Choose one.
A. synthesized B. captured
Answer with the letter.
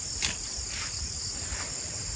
B